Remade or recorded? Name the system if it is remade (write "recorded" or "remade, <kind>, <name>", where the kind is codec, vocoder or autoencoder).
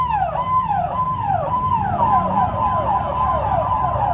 remade, vocoder, BigVGAN v2